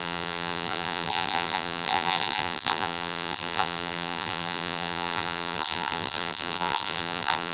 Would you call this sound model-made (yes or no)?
yes